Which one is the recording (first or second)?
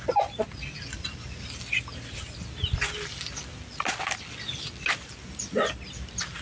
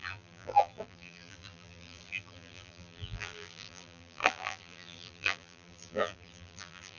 first